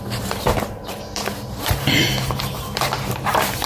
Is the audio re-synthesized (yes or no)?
yes